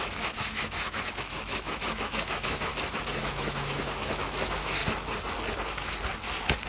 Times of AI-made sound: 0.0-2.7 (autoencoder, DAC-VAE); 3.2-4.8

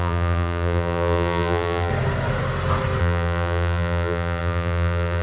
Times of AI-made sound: 0.0-1.9 (vocoder, BigVGAN v2); 3.0-5.2

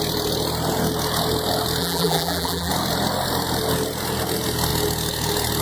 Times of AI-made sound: 1.8-2.7 (vocoder, BigVGAN v2)

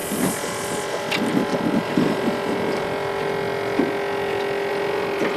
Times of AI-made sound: none

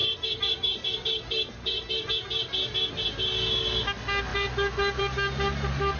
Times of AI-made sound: 0.0-2.1 (vocoder, BigVGAN v2); 4.3-5.0

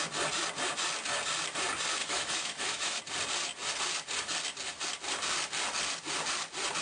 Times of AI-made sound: 2.0-3.0 (autoencoder, DAC-VAE)

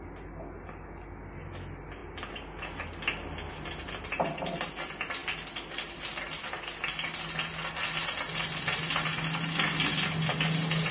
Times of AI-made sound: none

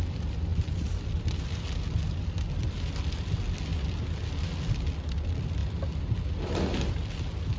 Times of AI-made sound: 0.5-1.4 (vocoder, BigVGAN v2)